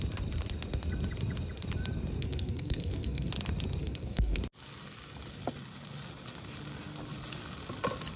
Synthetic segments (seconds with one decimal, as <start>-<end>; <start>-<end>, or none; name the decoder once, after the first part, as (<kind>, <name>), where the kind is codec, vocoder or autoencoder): 2.2-3.3 (codec, SNAC); 3.8-4.4